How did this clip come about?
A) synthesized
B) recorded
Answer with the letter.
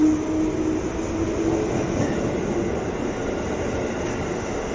B